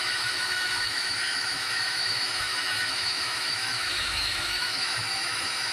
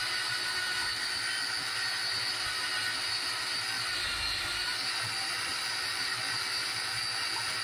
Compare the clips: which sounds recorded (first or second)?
second